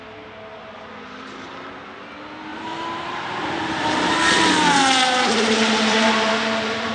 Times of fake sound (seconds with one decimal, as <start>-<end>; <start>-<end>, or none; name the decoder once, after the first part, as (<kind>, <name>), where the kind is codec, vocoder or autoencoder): 2.5-6.9 (vocoder, BigVGAN v2)